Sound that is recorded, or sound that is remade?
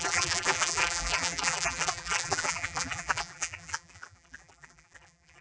remade